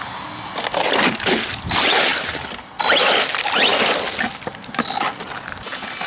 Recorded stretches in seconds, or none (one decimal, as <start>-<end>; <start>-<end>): 0.0-6.1